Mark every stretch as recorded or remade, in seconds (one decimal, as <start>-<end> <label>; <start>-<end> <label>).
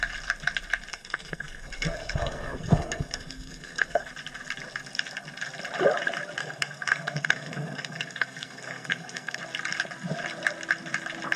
0.0-0.9 recorded; 0.9-4.1 remade; 4.1-6.4 recorded; 6.4-9.4 remade; 9.4-11.4 recorded